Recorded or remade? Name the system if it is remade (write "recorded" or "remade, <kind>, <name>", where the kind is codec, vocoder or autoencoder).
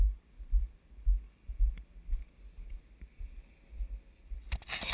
recorded